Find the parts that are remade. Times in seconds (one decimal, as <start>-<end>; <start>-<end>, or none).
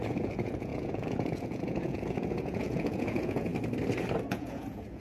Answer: 0.0-3.5; 4.3-5.0